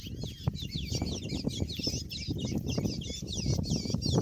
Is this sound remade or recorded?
recorded